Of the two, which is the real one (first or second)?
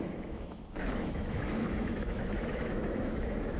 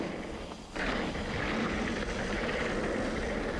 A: second